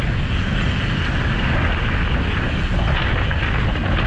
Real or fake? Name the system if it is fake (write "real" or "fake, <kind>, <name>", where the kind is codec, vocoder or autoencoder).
real